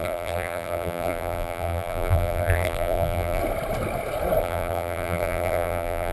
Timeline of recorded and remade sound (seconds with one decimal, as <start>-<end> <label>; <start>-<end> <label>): 0.0-3.4 remade; 3.4-4.4 recorded; 4.4-6.1 remade